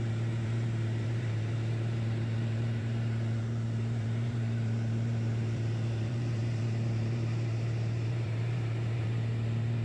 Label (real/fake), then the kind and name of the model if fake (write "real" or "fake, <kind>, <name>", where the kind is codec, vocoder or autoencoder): fake, vocoder, BigVGAN v2